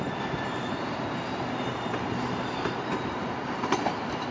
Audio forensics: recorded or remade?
remade